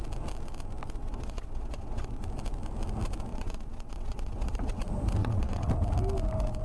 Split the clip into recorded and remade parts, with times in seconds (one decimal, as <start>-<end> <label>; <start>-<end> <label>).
0.0-1.0 recorded; 1.0-2.2 remade; 2.2-3.3 recorded; 3.3-4.8 remade; 4.8-5.2 recorded; 5.2-5.7 remade; 5.7-6.6 recorded